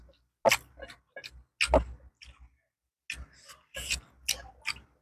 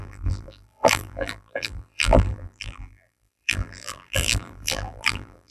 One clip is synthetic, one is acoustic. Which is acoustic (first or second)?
first